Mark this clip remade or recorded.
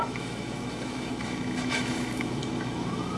remade